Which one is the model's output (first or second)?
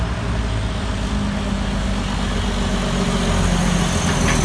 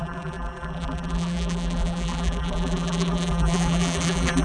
second